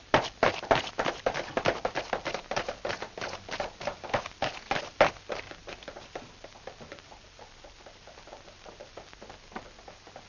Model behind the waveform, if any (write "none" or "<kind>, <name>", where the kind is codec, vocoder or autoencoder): none